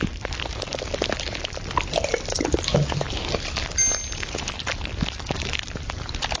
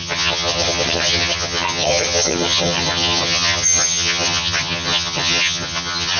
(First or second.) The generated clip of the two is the second